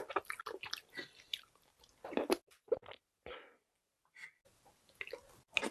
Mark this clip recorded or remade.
recorded